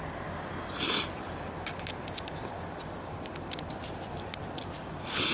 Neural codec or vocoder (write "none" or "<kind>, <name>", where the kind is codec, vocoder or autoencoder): none